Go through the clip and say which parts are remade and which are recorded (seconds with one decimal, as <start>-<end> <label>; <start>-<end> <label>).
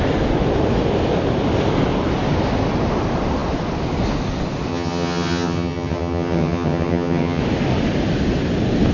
0.0-4.7 recorded; 4.7-7.4 remade; 7.4-8.9 recorded